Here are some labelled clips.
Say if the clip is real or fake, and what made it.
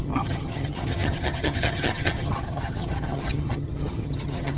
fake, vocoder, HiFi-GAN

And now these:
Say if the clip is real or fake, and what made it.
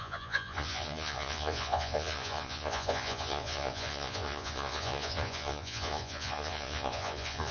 fake, vocoder, Vocos